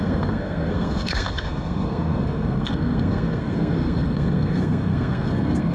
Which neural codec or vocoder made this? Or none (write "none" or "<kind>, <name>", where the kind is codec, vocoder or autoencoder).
codec, SNAC